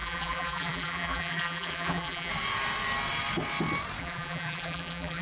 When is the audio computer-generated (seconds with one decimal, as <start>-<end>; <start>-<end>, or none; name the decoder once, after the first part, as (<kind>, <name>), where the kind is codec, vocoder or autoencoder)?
0.0-2.3 (vocoder, BigVGAN v2); 4.0-5.2